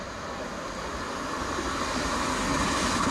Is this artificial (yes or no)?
no